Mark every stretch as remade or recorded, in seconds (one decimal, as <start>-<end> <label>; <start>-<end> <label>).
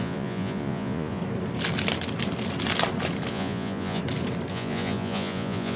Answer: 0.0-1.2 remade; 1.2-3.3 recorded; 3.3-4.0 remade; 4.0-4.5 recorded; 4.5-5.8 remade